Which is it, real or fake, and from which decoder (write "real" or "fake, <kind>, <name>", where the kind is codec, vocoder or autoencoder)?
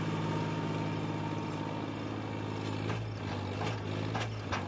real